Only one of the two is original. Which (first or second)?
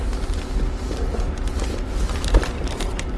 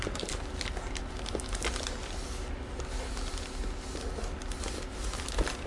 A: second